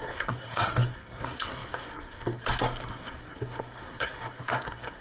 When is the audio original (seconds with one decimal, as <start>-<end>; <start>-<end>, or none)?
none